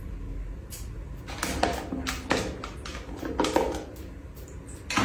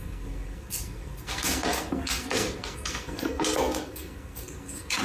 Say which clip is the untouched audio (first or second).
first